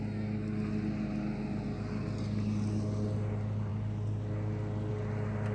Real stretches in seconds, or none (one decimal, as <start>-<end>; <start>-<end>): 0.0-5.5